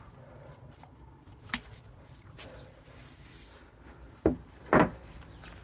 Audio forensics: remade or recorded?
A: recorded